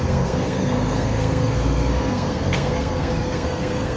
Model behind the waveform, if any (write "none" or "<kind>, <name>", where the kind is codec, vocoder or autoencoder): codec, SNAC